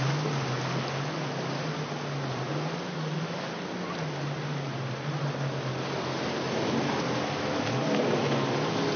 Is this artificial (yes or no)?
no